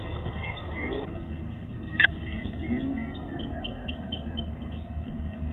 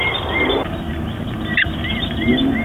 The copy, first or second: first